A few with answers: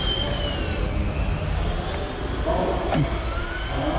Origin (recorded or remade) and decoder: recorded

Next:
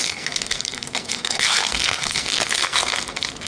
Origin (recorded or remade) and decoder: remade, codec, SNAC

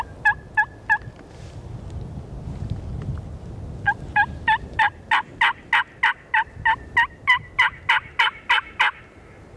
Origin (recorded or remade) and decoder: recorded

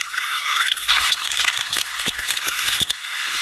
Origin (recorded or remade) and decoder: remade, codec, SNAC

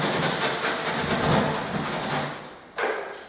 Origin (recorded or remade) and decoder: recorded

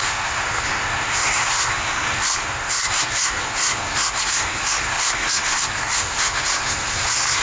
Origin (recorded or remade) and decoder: remade, codec, SNAC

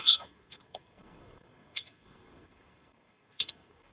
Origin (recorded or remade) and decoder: remade, codec, SNAC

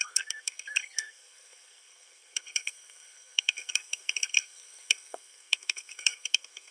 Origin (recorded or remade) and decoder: remade, codec, SNAC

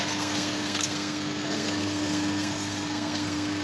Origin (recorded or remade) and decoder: remade, codec, SNAC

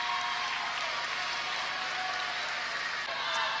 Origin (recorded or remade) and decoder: recorded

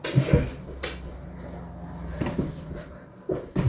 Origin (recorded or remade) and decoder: recorded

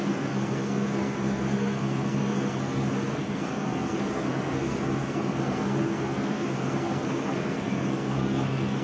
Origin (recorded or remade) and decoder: remade, codec, SNAC